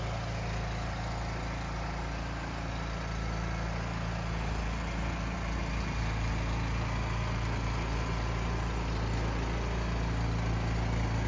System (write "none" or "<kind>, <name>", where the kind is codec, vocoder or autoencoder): none